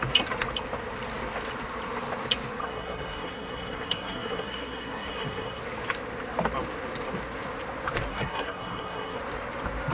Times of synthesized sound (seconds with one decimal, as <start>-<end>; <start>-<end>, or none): 2.6-5.6; 8.1-9.2